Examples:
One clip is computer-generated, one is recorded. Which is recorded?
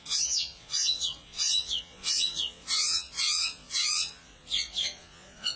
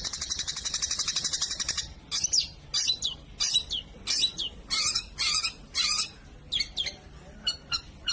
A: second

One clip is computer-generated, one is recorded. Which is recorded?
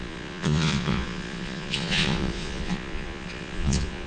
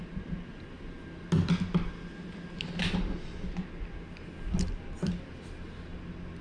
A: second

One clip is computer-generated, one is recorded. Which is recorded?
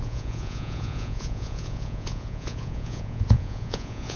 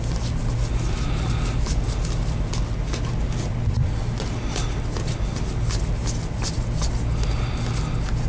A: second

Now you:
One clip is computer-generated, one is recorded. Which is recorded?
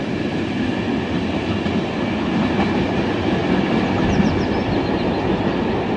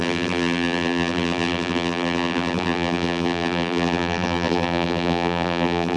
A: first